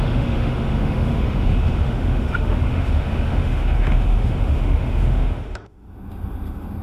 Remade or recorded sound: remade